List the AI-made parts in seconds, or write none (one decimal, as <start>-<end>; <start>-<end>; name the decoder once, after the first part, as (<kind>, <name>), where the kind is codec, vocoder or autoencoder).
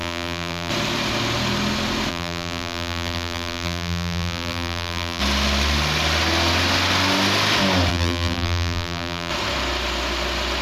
0.0-0.7 (vocoder, BigVGAN v2); 2.1-5.2; 7.9-9.3